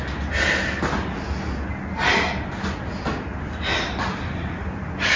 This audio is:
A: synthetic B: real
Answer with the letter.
B